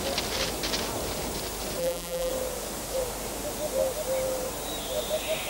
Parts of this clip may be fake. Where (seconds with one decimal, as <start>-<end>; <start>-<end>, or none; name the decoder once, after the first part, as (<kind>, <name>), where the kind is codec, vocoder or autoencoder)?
1.8-2.3 (vocoder, BigVGAN v2)